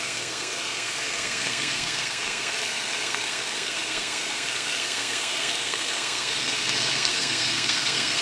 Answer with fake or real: fake